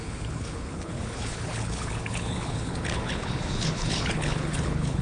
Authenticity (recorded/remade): remade